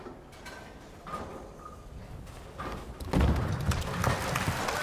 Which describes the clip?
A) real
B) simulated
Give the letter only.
A